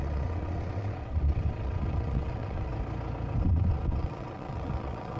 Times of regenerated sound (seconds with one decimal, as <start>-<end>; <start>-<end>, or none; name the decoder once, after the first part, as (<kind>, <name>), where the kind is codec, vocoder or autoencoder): 0.0-2.7 (vocoder, WaveNeXt); 3.4-5.2